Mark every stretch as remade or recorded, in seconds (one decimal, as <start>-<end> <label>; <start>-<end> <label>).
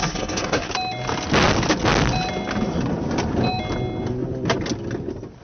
0.0-0.7 remade; 0.7-5.4 recorded